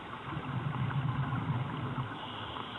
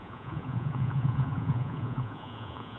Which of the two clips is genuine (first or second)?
first